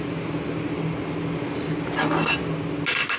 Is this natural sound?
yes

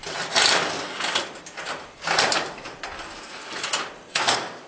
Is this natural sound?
yes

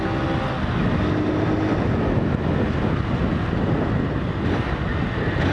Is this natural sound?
yes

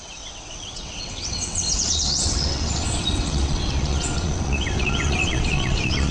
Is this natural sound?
no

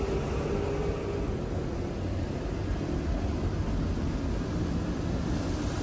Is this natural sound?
yes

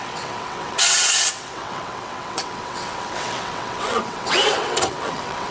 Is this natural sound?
no